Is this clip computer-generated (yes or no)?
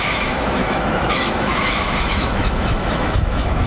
yes